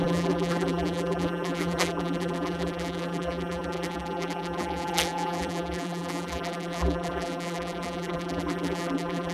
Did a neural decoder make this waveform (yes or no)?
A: yes